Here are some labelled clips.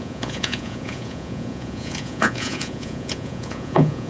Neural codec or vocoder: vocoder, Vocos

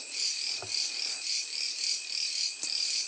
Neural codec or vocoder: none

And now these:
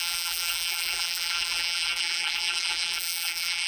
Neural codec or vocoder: vocoder, BigVGAN v2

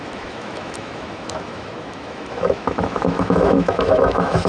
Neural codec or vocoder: autoencoder, DAC-VAE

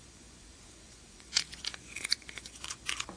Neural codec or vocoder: vocoder, Vocos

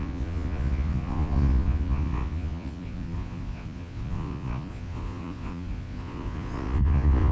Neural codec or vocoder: vocoder, Vocos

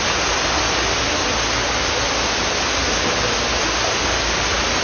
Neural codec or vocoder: none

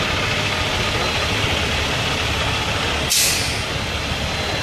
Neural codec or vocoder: none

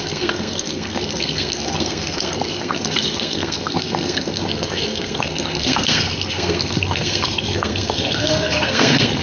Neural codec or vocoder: codec, SNAC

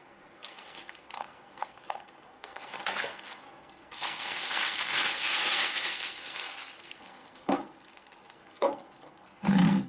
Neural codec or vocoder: codec, SNAC